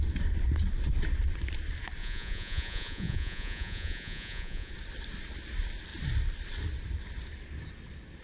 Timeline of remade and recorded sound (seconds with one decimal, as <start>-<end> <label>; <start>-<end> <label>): 0.0-2.0 recorded; 2.0-4.7 remade; 4.7-8.2 recorded